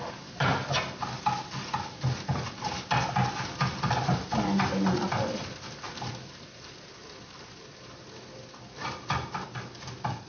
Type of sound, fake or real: real